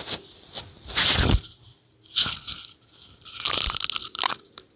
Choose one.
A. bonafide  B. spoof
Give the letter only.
A